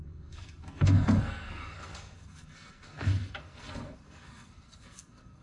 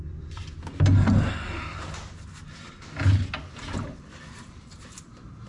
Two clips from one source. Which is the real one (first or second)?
second